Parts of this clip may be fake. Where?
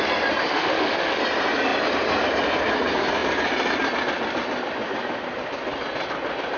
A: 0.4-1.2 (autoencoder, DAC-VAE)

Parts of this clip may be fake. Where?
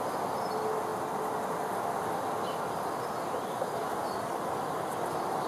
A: none